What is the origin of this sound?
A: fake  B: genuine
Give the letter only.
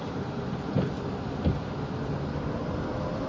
B